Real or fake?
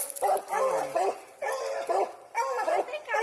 real